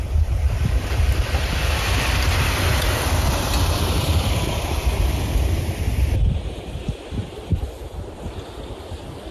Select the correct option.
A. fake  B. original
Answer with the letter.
A